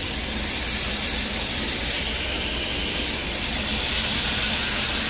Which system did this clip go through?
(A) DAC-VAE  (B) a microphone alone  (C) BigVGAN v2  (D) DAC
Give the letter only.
C